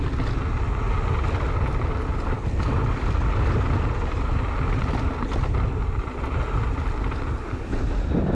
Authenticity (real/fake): real